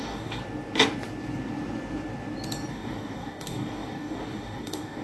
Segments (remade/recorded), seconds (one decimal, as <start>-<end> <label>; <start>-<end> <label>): 0.0-0.4 remade; 0.4-2.7 recorded; 2.7-5.0 remade